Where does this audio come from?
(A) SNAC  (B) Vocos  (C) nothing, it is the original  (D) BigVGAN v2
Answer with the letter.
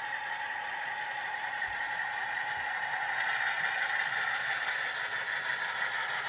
C